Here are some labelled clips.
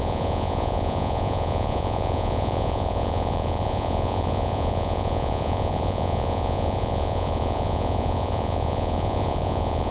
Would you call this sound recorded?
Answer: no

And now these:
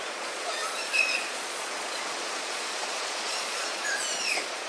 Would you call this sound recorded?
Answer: no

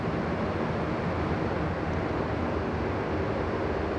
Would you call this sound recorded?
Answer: yes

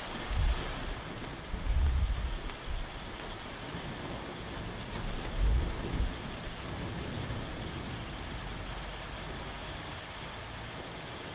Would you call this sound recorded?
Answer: yes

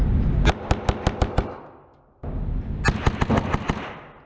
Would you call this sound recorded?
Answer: yes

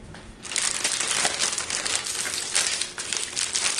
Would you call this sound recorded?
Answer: yes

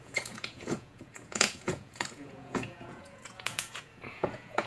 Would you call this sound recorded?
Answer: no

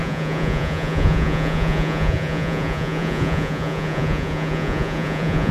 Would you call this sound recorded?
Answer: no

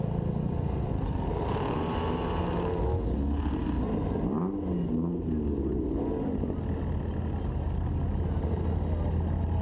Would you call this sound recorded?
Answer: yes